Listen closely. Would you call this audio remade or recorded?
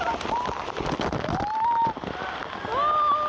recorded